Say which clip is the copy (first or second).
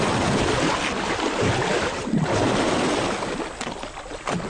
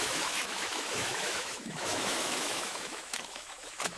second